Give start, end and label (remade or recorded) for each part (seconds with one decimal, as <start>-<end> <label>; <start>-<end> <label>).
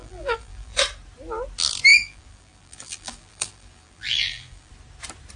0.0-0.8 remade; 0.8-1.9 recorded; 1.9-4.7 remade; 4.7-5.4 recorded